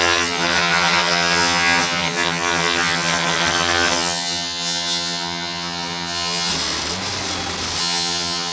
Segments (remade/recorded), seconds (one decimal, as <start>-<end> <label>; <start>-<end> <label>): 0.0-6.5 remade; 6.5-7.8 recorded; 7.8-8.5 remade